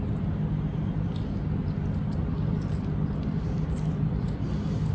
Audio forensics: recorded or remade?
recorded